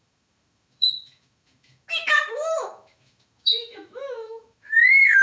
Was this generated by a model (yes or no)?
yes